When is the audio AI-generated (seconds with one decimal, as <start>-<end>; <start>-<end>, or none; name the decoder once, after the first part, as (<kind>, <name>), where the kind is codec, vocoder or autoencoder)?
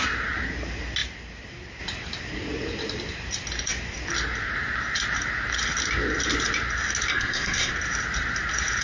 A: 7.1-7.7 (codec, SNAC)